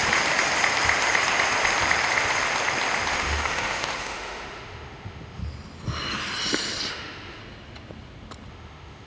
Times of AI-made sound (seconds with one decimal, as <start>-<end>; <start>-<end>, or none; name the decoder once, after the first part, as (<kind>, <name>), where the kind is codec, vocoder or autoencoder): 3.1-5.4 (autoencoder, DAC-VAE); 6.9-7.4; 8.5-9.1